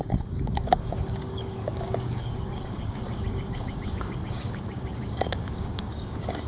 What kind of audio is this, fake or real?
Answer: fake